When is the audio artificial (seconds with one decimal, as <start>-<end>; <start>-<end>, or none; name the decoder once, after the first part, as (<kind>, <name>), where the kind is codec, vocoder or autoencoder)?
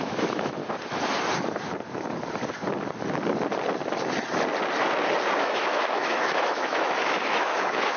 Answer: 0.0-0.6 (autoencoder, DAC-VAE); 5.4-8.0